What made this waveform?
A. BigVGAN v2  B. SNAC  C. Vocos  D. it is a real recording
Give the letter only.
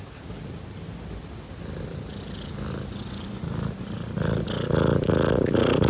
D